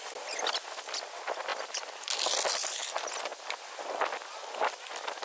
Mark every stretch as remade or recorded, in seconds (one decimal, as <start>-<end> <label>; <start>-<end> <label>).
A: 0.0-5.2 recorded